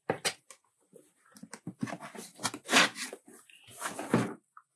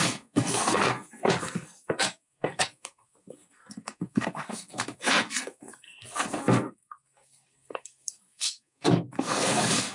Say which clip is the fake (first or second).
second